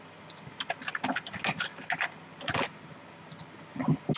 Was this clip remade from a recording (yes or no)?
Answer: no